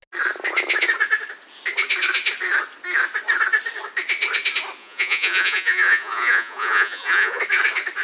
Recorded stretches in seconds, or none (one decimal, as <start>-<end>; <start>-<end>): 0.0-4.8; 7.4-8.0